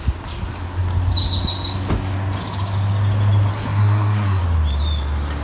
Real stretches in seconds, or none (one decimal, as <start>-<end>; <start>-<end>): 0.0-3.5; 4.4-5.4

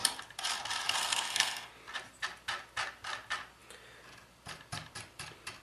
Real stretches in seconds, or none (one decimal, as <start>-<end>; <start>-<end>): 0.0-1.0; 1.7-5.6

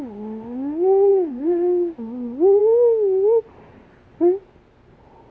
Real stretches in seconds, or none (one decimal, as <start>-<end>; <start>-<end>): 0.0-1.1; 1.9-5.3